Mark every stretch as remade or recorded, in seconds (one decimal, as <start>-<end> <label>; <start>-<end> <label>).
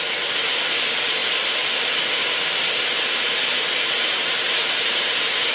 0.0-1.2 recorded; 1.2-3.3 remade; 3.3-5.5 recorded